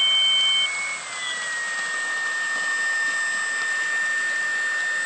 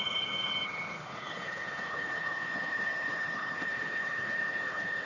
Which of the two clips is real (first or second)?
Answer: first